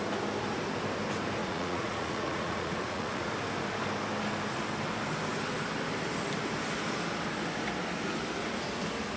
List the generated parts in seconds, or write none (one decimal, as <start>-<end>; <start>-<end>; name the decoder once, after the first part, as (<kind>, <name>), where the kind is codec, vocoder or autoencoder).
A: 1.4-3.3 (vocoder, Vocos)